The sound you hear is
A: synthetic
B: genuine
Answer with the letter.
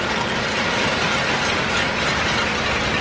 B